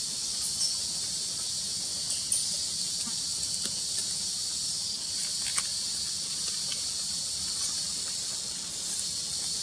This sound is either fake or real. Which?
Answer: real